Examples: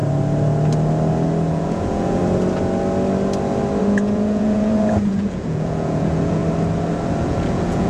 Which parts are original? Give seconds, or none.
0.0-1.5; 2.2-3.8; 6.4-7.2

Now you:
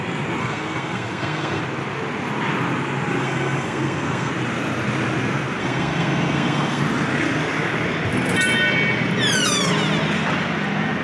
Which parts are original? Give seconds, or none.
0.0-0.4; 1.6-3.2; 4.3-5.6; 6.8-11.0